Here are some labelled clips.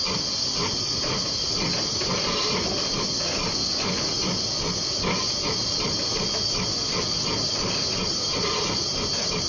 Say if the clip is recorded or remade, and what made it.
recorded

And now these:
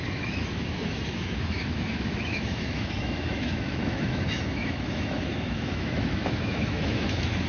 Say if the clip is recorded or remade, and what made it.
remade, autoencoder, DAC-VAE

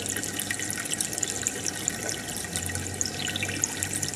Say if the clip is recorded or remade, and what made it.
recorded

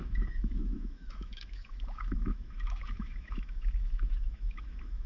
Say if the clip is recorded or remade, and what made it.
remade, autoencoder, DAC-VAE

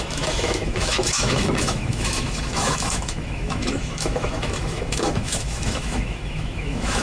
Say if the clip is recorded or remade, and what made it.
remade, autoencoder, DAC-VAE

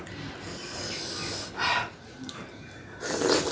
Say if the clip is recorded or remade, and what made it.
recorded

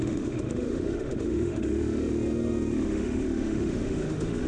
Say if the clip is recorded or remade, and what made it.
remade, autoencoder, DAC-VAE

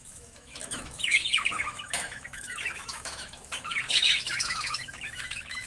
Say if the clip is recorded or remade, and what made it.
remade, autoencoder, DAC-VAE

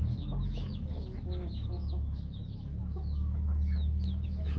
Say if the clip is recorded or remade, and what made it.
remade, autoencoder, DAC-VAE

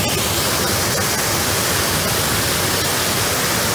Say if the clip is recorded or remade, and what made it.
recorded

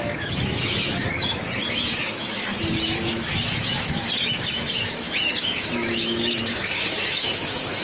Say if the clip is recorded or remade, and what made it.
remade, autoencoder, DAC-VAE